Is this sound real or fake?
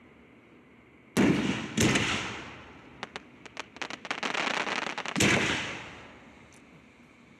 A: real